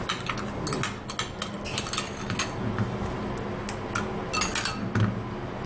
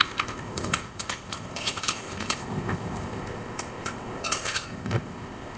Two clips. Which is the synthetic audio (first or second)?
second